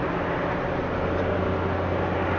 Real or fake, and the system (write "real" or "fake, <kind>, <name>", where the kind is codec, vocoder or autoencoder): real